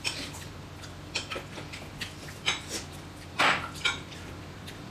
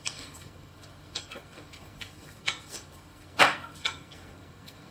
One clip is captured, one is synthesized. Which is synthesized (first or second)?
second